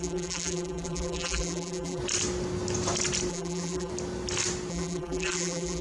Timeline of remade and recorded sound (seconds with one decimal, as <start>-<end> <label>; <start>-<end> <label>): 0.0-2.0 remade; 2.0-3.3 recorded; 3.3-3.9 remade; 3.9-4.7 recorded; 4.7-5.8 remade